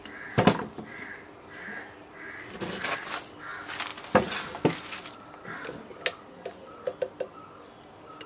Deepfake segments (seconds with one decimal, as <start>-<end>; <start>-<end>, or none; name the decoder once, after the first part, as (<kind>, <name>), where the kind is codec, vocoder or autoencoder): none